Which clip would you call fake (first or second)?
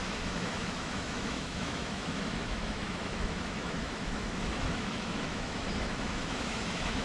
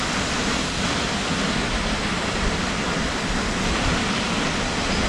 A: first